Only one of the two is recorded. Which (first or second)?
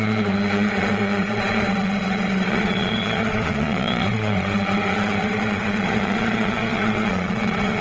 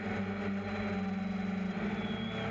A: second